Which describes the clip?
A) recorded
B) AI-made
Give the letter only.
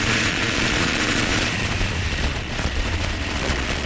B